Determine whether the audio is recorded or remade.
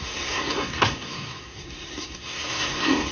remade